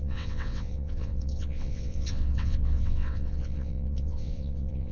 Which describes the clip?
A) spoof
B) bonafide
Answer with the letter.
A